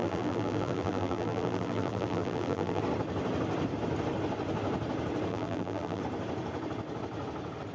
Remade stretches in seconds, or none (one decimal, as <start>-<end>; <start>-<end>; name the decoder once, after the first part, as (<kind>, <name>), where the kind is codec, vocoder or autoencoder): 0.0-2.8 (vocoder, BigVGAN v2); 5.3-6.0